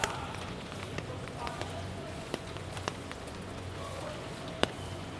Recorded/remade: remade